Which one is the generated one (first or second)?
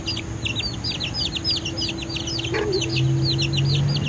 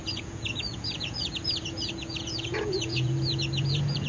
second